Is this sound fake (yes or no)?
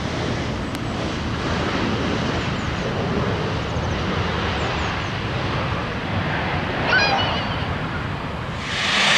no